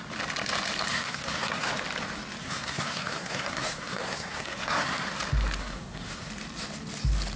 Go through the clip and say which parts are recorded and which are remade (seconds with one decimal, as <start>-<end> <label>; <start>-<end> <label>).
0.0-0.9 recorded; 0.9-1.7 remade; 1.7-2.4 recorded; 2.4-5.1 remade; 5.1-5.6 recorded; 5.6-6.3 remade; 6.3-7.4 recorded